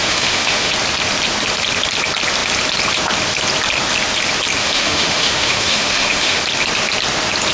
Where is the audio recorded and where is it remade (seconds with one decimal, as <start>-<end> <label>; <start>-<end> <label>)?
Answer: 0.0-0.7 remade; 0.7-4.6 recorded; 4.6-6.4 remade; 6.4-7.5 recorded